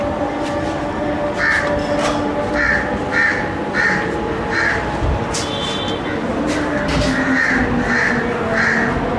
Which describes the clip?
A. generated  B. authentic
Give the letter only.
B